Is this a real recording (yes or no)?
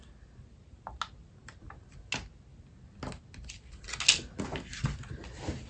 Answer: yes